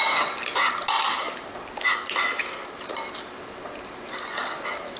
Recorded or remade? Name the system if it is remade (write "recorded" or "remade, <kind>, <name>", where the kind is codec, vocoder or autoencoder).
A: recorded